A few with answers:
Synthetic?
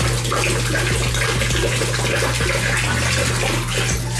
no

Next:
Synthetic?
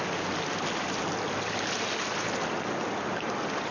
no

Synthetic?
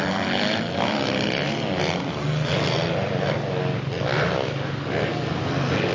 no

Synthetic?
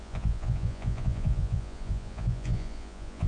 yes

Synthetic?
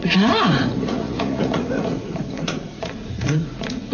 yes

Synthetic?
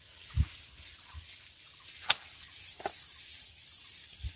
no